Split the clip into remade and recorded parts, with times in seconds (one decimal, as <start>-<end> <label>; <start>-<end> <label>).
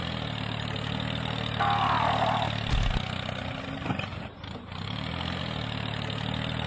0.0-4.1 recorded; 4.1-5.4 remade; 5.4-6.7 recorded